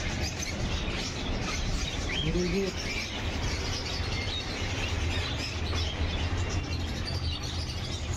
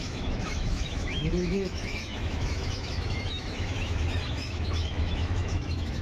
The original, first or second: first